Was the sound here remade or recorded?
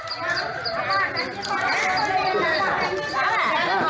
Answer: recorded